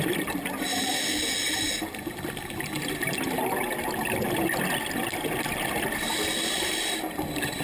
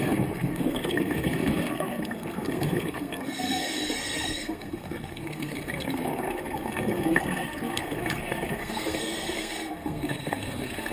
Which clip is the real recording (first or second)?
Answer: first